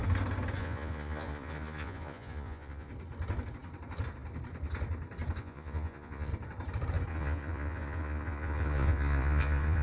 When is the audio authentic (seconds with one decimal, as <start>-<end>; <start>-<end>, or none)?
0.0-0.6; 2.9-5.4; 6.3-7.1